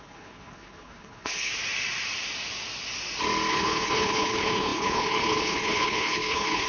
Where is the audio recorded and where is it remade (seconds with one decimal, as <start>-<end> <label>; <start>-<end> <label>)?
0.0-1.5 remade; 1.5-3.5 recorded; 3.5-6.7 remade